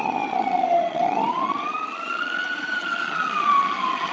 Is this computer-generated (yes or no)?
yes